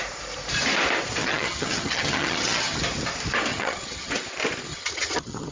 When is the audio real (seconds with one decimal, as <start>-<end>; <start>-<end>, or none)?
0.0-1.2; 2.8-3.5; 4.1-4.7